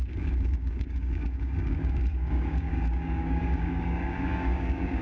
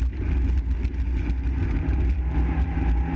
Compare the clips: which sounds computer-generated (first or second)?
first